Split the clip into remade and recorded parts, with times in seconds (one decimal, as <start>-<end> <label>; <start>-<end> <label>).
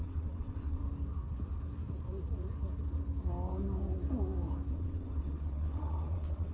0.0-0.8 remade; 0.8-4.7 recorded; 4.7-6.5 remade